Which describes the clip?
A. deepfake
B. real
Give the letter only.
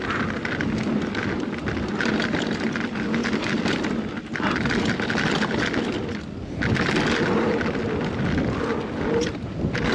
B